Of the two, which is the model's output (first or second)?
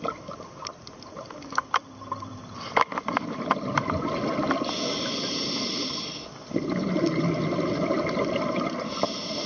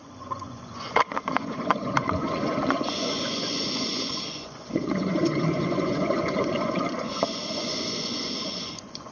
second